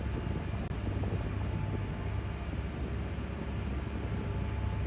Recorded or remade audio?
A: recorded